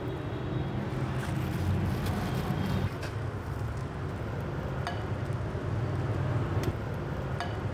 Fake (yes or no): no